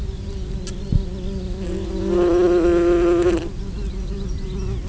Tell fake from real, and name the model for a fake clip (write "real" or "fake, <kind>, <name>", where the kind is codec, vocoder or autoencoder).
real